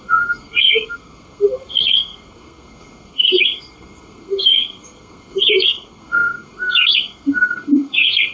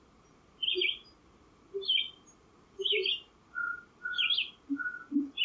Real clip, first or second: second